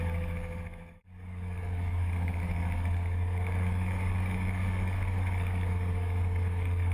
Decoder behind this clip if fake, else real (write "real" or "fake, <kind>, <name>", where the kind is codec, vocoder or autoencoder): fake, codec, DAC